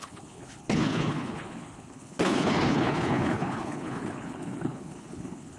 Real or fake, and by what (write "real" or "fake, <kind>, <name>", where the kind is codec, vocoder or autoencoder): fake, codec, HILCodec